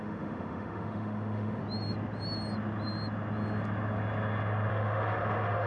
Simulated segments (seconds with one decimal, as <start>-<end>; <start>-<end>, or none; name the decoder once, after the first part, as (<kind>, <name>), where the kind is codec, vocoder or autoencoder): 0.0-1.6 (autoencoder, DAC-VAE); 4.7-5.7